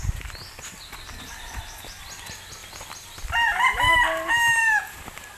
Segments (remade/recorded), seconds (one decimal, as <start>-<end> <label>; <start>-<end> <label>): 0.0-5.4 recorded